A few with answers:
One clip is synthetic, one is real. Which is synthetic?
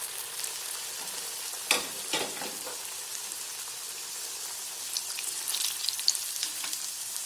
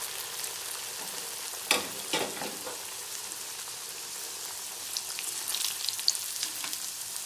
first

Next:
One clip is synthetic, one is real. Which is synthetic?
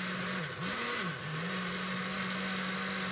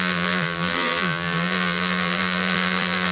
second